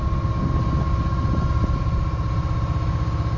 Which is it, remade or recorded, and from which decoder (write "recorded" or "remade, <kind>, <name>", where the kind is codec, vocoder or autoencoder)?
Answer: recorded